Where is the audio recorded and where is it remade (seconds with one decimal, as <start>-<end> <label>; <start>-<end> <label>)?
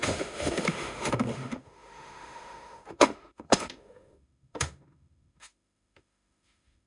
0.0-6.9 remade